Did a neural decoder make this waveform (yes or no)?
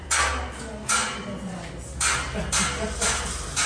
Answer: no